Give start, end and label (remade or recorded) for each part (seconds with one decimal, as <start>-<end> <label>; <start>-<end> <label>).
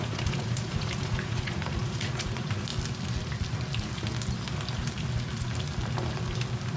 0.0-2.7 remade; 2.7-6.8 recorded